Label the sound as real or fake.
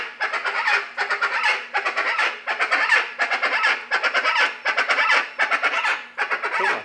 real